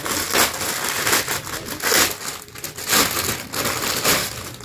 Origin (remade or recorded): recorded